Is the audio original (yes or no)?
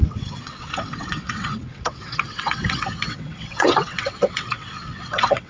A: no